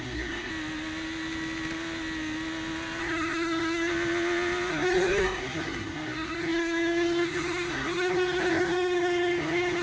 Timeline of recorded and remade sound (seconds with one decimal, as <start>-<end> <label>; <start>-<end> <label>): 0.0-0.5 remade; 0.5-3.0 recorded; 3.0-3.9 remade; 3.9-4.7 recorded; 4.7-9.8 remade